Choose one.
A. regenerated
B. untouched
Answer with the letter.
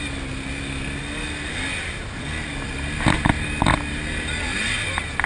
B